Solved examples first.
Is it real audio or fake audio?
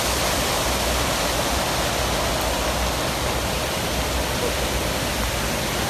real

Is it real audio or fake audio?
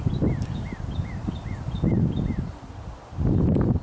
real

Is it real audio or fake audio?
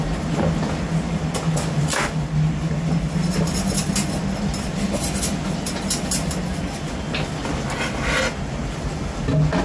real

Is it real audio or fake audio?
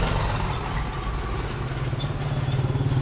real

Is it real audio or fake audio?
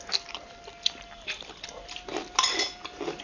real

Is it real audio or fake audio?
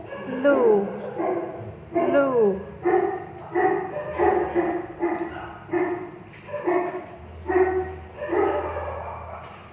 real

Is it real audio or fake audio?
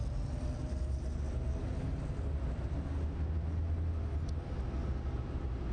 real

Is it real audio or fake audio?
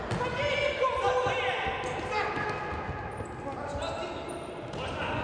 real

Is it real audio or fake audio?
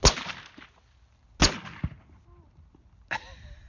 real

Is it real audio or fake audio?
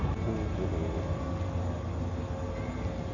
real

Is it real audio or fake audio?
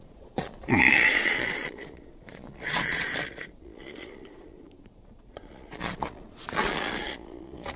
fake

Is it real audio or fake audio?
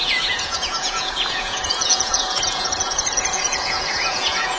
fake